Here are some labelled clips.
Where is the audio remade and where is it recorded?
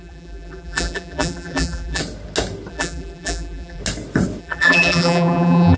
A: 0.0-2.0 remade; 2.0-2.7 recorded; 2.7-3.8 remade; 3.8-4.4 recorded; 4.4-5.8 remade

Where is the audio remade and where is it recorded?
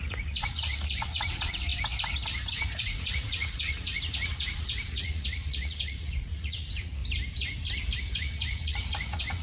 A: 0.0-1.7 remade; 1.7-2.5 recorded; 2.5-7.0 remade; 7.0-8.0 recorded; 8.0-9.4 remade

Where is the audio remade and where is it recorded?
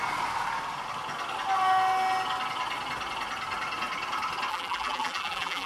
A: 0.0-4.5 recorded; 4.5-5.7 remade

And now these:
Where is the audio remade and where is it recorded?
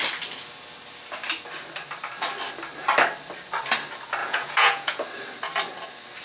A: 0.0-4.2 recorded; 4.2-5.0 remade; 5.0-6.2 recorded